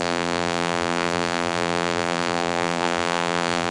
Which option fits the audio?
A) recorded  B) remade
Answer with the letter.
B